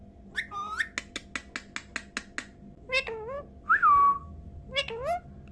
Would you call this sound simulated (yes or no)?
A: no